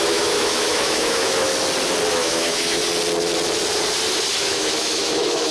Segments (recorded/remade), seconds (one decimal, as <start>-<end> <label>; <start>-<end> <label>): 0.0-1.5 remade; 1.5-2.1 recorded; 2.1-2.8 remade; 2.8-4.4 recorded; 4.4-5.5 remade